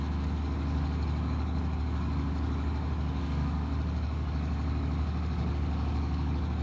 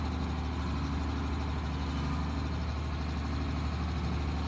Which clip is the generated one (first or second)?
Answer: first